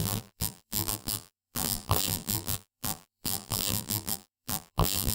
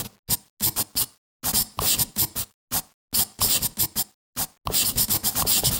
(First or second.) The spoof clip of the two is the first